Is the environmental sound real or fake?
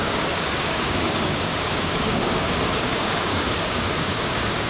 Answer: fake